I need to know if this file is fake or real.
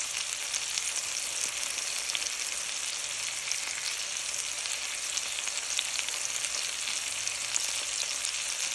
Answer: real